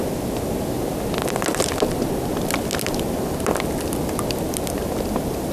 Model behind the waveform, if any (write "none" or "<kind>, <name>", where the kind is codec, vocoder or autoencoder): none